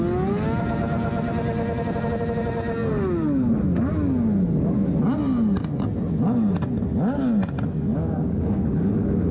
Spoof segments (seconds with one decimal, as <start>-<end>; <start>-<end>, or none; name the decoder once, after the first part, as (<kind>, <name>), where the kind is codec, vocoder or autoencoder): 7.9-8.9 (codec, DAC)